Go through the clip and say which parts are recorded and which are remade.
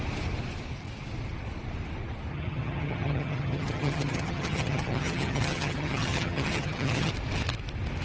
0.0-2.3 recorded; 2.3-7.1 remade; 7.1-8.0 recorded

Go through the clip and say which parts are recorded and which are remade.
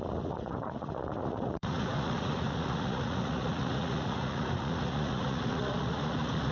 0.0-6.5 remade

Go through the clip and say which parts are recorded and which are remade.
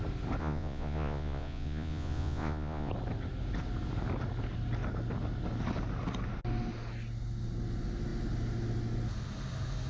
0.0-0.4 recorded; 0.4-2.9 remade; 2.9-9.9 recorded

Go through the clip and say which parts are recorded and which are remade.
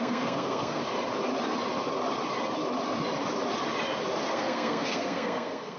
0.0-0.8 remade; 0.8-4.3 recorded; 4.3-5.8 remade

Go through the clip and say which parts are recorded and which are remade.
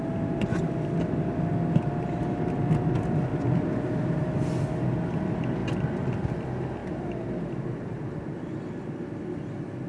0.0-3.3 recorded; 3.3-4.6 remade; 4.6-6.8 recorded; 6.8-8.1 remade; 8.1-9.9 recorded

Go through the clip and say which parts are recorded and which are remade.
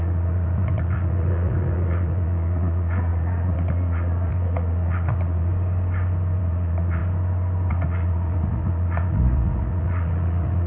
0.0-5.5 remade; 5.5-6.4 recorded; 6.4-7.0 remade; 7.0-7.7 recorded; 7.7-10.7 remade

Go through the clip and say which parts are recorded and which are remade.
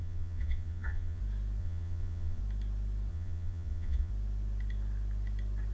0.0-1.2 remade; 1.2-1.6 recorded; 1.6-2.4 remade; 2.4-3.1 recorded; 3.1-4.1 remade; 4.1-5.7 recorded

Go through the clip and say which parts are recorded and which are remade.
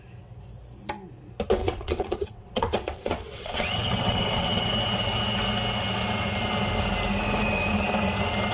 0.0-1.6 recorded; 1.6-4.7 remade; 4.7-8.5 recorded